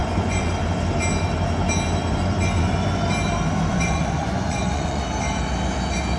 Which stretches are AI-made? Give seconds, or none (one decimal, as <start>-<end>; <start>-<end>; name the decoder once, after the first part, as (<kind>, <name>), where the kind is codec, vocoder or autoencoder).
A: 0.0-0.5 (vocoder, Vocos); 2.0-2.7; 3.7-5.0

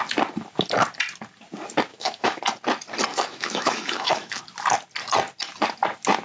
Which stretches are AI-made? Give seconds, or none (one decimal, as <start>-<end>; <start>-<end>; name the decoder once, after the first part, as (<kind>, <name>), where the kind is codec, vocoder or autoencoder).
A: 1.9-2.4 (autoencoder, DAC-VAE); 3.1-4.4

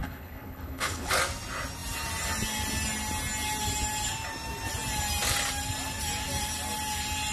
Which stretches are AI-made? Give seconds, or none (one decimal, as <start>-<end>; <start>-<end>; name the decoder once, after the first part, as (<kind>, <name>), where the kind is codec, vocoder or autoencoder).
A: 0.0-1.1 (codec, HILCodec)

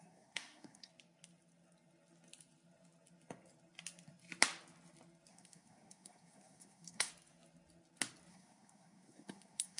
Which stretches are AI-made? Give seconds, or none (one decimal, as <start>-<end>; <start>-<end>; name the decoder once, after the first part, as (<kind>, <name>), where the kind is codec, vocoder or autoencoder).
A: 0.0-0.9 (codec, SNAC); 5.3-7.1; 8.3-9.8

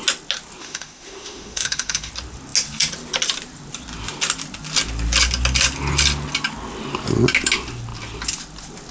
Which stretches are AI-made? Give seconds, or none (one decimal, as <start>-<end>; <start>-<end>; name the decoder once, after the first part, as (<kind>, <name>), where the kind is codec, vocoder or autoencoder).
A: 0.6-2.1 (autoencoder, DAC-VAE)

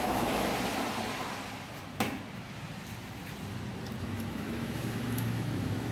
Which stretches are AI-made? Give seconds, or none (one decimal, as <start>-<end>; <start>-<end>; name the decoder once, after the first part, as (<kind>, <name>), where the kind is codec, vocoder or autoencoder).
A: 0.0-0.5 (autoencoder, DAC-VAE); 4.0-5.9

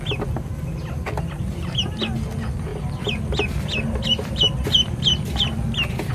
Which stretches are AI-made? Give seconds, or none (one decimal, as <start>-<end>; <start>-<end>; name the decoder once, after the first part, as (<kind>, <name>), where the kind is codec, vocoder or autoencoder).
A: none

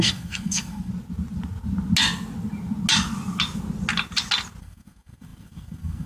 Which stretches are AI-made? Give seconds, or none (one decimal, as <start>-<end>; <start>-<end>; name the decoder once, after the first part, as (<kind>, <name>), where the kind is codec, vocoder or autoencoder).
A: 0.0-0.9 (codec, SNAC); 4.6-6.1